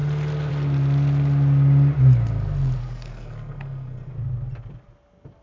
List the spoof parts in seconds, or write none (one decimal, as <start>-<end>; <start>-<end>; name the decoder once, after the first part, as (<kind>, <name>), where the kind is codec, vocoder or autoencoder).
2.8-4.1 (codec, SNAC)